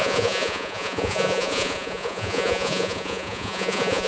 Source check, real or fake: fake